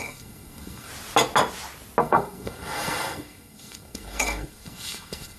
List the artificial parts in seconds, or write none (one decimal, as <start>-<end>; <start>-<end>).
0.0-0.9; 2.0-5.4